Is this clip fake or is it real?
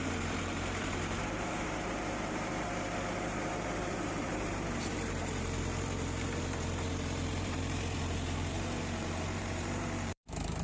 fake